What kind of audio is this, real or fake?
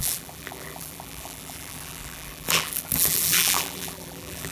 fake